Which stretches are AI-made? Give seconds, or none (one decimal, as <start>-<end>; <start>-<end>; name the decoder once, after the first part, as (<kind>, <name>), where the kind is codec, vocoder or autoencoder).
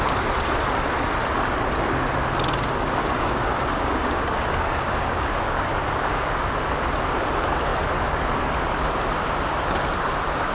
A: 3.0-6.5 (codec, DAC)